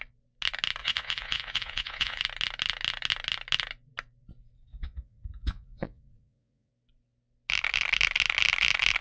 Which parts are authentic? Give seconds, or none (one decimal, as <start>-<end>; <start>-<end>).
0.0-0.8; 2.2-4.7; 6.7-9.0